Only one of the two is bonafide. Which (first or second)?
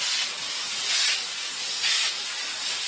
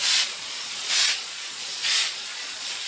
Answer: first